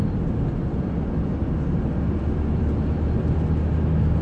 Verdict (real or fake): real